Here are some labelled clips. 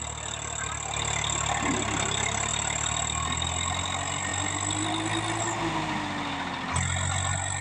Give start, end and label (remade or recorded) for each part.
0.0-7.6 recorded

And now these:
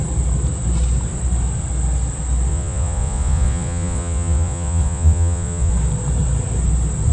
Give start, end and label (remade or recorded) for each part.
0.0-2.5 recorded; 2.5-5.7 remade; 5.7-7.1 recorded